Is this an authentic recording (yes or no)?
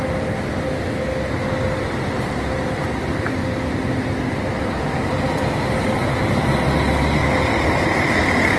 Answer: yes